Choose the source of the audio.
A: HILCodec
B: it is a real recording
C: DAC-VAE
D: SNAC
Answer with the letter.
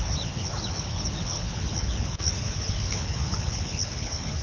A